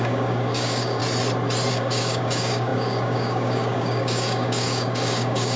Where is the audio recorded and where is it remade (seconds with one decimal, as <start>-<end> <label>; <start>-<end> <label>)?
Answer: 0.0-1.0 remade; 1.0-1.7 recorded; 1.7-5.6 remade